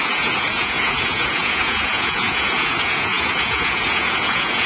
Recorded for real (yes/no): no